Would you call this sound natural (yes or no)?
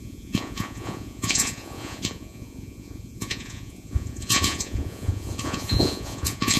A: no